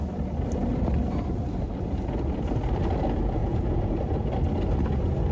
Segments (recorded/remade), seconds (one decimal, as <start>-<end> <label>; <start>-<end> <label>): 0.0-3.4 recorded; 3.4-3.9 remade; 3.9-5.3 recorded